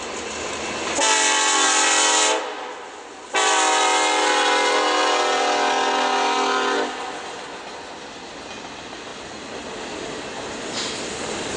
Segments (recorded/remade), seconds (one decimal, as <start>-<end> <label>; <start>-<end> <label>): 0.0-11.6 recorded